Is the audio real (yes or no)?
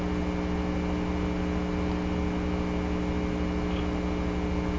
yes